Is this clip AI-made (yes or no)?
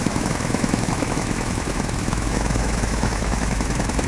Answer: yes